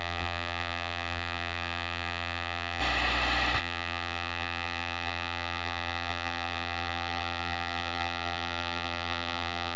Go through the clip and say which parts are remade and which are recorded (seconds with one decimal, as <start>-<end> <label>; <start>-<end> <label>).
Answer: 0.0-2.8 remade; 2.8-3.6 recorded; 3.6-9.8 remade